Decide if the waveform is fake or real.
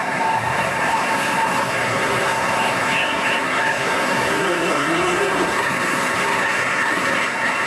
fake